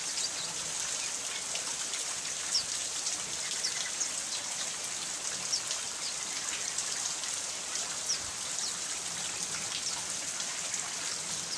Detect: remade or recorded recorded